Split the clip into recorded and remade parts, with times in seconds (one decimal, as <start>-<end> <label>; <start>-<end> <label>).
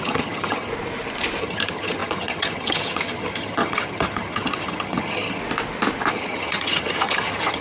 0.0-0.7 remade; 0.7-1.4 recorded; 1.4-5.4 remade; 5.4-6.1 recorded; 6.1-7.6 remade